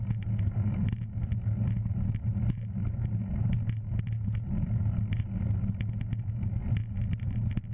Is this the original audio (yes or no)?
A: yes